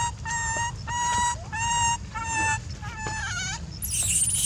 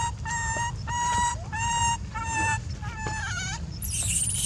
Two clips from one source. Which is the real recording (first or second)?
first